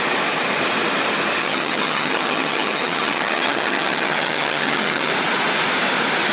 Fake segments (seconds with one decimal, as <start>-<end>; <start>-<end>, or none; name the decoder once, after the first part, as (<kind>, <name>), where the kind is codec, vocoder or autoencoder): 1.4-5.1 (vocoder, HiFi-GAN)